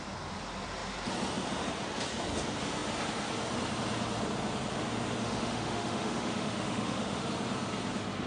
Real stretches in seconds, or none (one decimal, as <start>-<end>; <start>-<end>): 0.0-5.2; 7.2-8.3

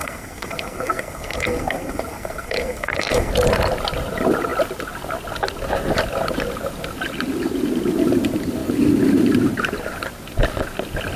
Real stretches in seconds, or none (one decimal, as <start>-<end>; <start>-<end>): 3.3-11.2

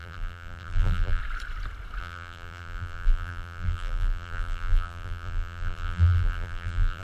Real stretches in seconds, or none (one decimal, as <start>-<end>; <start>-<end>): 1.2-2.0

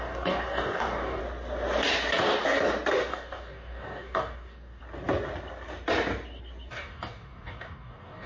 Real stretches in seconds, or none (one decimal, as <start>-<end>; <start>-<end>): 1.2-3.1; 4.8-6.7

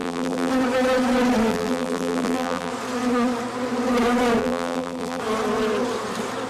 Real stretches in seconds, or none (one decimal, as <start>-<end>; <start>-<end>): 0.5-1.5; 2.7-4.4; 5.2-6.5

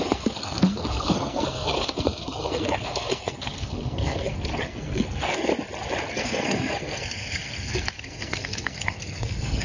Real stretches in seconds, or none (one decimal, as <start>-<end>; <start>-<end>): 5.5-6.1